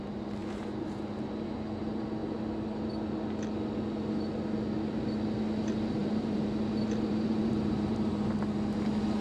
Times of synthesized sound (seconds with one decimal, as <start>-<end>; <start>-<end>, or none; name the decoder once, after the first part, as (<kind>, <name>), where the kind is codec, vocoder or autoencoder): 0.4-1.4 (vocoder, BigVGAN v2); 6.0-6.6; 7.1-8.4